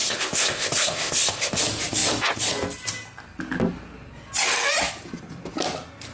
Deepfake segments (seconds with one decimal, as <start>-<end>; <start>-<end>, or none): 0.0-1.6